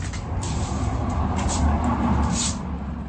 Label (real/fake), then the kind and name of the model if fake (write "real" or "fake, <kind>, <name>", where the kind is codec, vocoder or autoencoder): real